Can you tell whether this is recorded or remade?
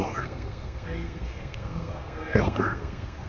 remade